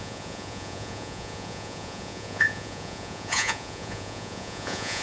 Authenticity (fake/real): fake